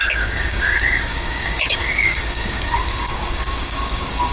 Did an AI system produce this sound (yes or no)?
yes